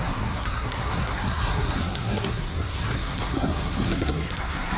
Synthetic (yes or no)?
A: yes